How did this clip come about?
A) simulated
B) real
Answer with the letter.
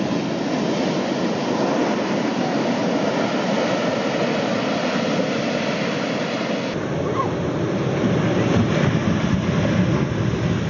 B